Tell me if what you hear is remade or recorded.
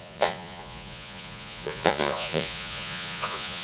remade